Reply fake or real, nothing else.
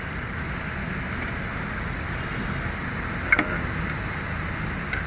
real